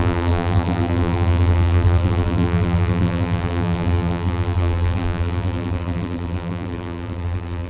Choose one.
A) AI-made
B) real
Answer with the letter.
A